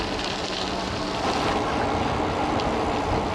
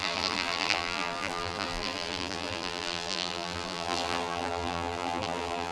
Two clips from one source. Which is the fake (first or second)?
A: second